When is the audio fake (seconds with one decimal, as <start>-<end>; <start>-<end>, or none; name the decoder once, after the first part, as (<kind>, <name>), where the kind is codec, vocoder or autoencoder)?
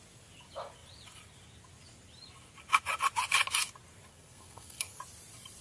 4.1-5.0 (codec, SNAC)